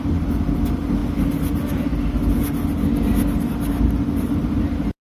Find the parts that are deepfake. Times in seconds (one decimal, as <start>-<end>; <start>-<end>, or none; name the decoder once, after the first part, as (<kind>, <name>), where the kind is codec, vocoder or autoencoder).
0.0-1.0 (vocoder, BigVGAN v2); 3.4-5.1